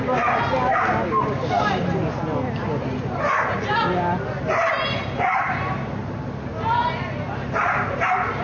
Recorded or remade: recorded